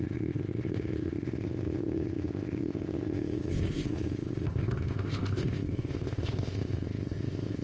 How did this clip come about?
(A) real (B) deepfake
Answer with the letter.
B